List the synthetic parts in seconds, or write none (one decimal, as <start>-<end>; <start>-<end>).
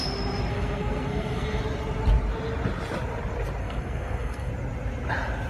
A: 0.5-1.6; 3.6-4.5